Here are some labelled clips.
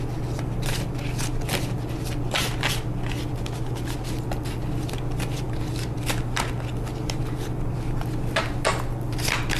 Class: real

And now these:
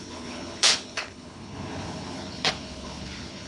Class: fake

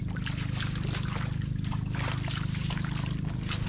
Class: real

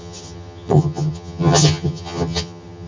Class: fake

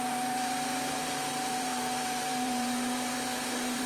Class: fake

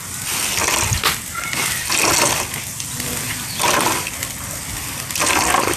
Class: real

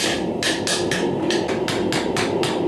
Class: real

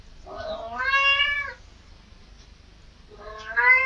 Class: real